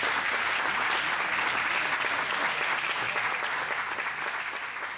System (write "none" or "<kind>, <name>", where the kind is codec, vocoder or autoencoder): none